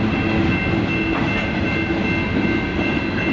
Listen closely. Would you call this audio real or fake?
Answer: real